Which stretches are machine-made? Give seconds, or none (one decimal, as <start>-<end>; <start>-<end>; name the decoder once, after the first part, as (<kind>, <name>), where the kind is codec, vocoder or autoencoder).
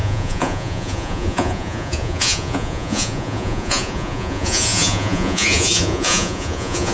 0.0-6.9 (vocoder, Vocos)